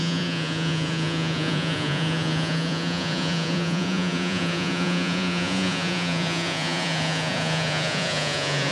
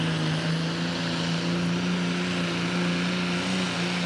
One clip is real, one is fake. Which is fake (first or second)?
first